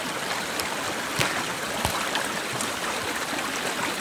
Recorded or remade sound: recorded